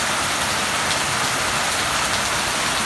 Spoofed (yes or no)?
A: no